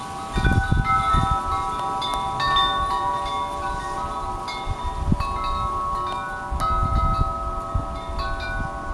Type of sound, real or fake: real